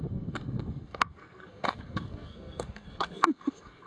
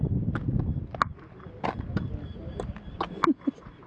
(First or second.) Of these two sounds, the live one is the second